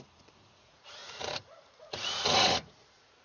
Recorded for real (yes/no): no